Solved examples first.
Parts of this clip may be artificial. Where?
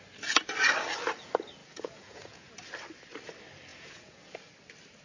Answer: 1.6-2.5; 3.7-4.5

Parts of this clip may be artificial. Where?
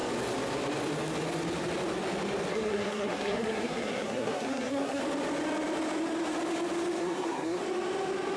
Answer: 2.5-5.0; 7.0-7.6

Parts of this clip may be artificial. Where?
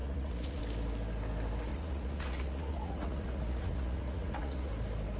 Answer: 0.0-0.6; 1.7-4.7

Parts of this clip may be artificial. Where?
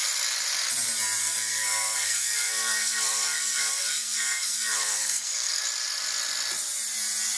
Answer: 1.2-5.6